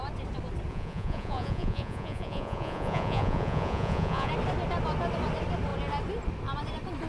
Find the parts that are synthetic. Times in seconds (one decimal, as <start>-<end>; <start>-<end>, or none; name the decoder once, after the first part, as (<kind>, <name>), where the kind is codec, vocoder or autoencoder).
0.7-4.3 (vocoder, Vocos)